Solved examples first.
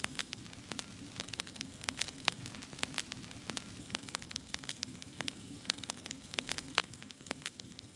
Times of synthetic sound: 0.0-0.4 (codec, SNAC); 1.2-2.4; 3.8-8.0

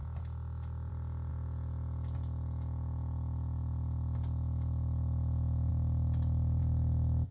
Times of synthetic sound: none

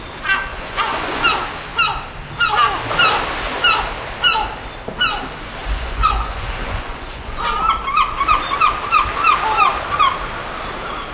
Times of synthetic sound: 0.5-1.2 (vocoder, Vocos); 5.6-7.4

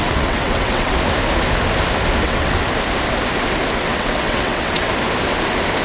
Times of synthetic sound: 0.0-0.9 (vocoder, WaveNeXt); 2.2-2.7; 3.8-4.9

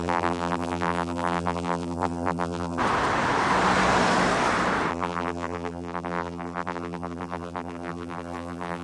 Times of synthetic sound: 0.0-2.8 (vocoder, BigVGAN v2); 4.9-8.8

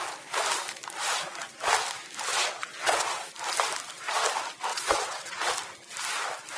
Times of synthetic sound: 2.3-3.3 (vocoder, WaveNeXt); 4.7-5.5